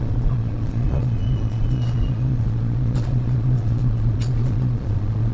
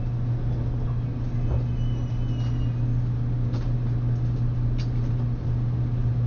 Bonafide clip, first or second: second